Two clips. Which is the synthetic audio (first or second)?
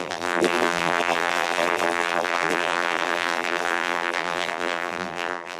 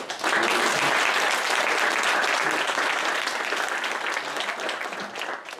first